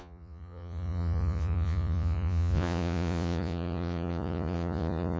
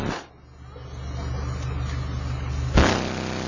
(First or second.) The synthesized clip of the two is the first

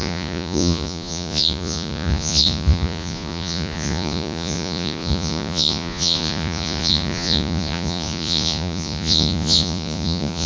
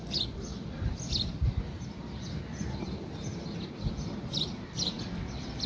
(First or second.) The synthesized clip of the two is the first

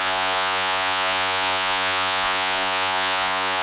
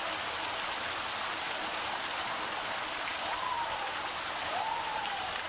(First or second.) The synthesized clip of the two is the first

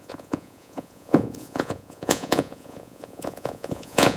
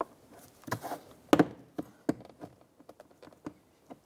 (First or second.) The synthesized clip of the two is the first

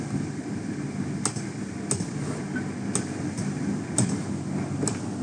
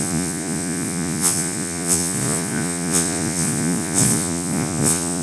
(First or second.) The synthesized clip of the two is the second